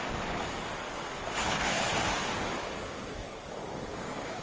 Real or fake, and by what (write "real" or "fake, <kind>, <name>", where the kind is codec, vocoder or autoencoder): fake, codec, DAC